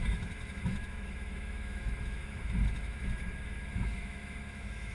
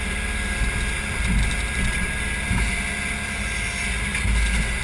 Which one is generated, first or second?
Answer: first